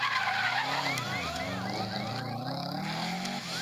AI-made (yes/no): no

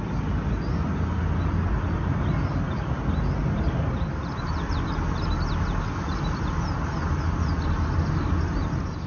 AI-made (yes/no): no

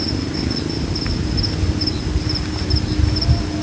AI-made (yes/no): no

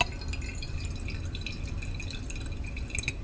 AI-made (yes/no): no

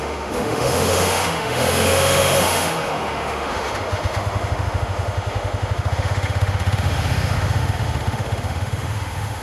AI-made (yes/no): yes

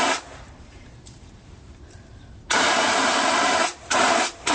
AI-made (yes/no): yes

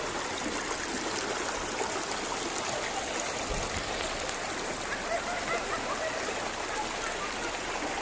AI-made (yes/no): no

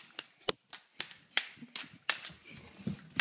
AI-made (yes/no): no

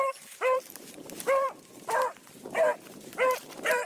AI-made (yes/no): yes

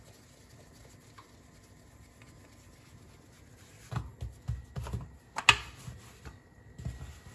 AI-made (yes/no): no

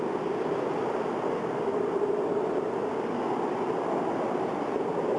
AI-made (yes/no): no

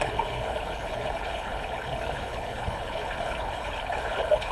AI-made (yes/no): yes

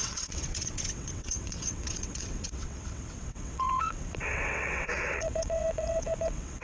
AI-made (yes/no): yes